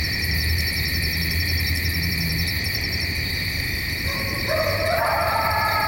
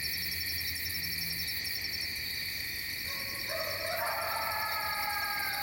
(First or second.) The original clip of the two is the second